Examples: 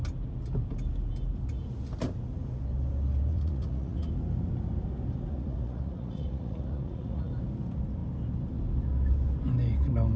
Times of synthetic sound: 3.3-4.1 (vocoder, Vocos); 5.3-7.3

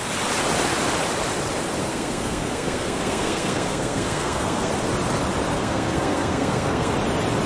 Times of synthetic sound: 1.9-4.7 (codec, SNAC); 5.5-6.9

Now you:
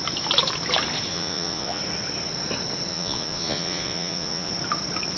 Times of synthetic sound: 1.1-1.8 (vocoder, Vocos); 2.9-4.5

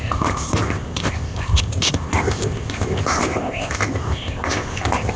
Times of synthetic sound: 0.0-5.2 (codec, ZipCodec)

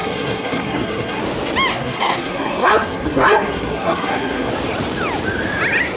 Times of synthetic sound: 0.0-1.2 (codec, SNAC); 1.7-4.5

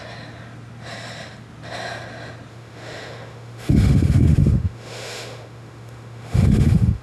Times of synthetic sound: 2.5-7.0 (autoencoder, DAC-VAE)